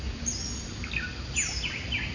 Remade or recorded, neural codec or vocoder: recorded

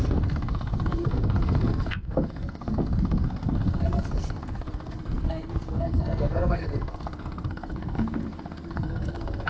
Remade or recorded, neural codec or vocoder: remade, codec, SNAC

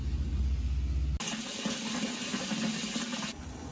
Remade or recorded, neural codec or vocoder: recorded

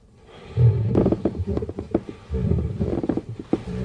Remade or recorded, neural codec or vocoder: recorded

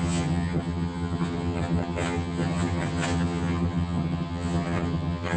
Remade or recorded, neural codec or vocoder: remade, vocoder, HiFi-GAN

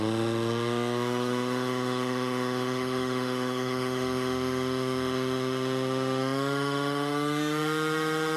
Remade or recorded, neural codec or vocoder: remade, autoencoder, DAC-VAE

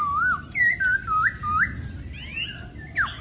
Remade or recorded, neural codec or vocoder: recorded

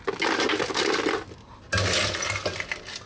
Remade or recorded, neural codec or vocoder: recorded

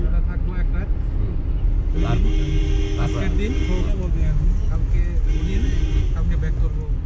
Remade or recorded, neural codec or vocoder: recorded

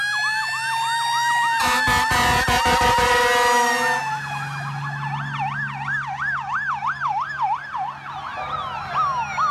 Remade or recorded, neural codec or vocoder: recorded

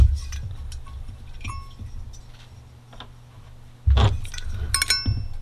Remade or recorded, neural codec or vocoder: recorded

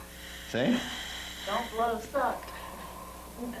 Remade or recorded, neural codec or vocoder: recorded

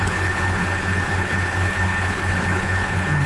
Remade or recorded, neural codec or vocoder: remade, codec, HILCodec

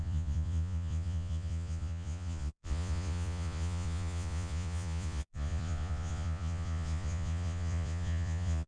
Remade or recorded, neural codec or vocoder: remade, vocoder, Vocos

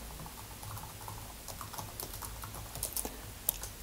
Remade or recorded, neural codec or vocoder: recorded